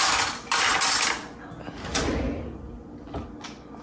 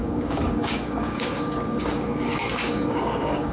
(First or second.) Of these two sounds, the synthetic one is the second